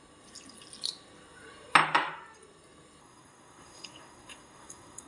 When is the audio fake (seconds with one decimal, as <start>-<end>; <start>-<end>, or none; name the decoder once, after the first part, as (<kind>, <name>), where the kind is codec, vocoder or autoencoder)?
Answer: 3.0-5.1 (codec, SNAC)